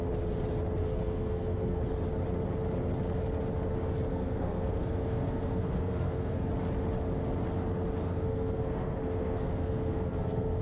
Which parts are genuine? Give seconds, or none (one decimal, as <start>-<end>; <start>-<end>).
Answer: 0.0-0.8; 1.8-4.1; 6.5-8.0